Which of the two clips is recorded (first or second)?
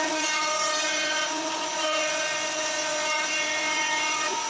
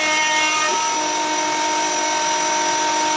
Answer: second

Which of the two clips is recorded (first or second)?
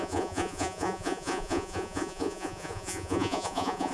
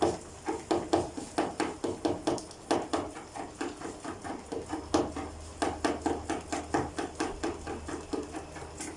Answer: second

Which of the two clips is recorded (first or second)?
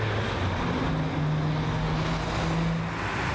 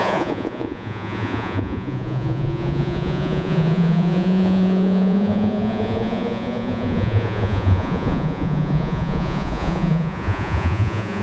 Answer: first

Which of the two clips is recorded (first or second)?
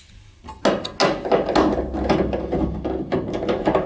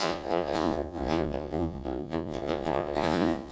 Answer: first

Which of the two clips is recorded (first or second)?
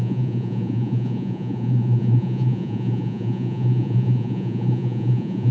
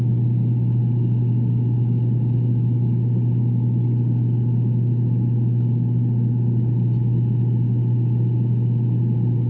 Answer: second